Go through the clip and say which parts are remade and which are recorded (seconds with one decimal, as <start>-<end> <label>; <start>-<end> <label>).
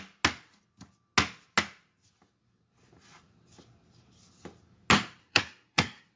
0.0-5.2 recorded; 5.2-6.2 remade